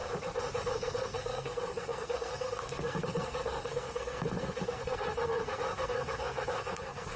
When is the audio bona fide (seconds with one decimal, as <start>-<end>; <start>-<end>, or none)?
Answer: 0.0-0.7